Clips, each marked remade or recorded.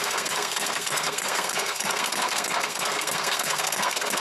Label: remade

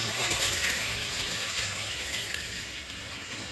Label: remade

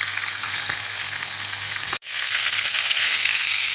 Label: remade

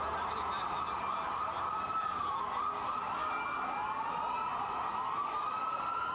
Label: recorded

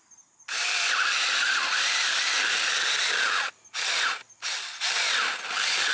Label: recorded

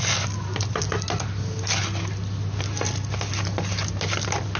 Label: recorded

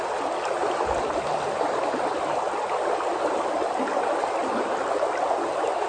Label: recorded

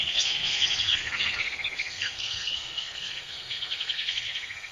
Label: remade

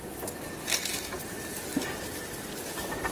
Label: recorded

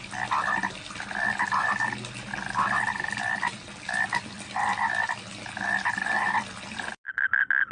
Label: recorded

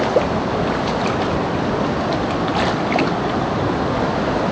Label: recorded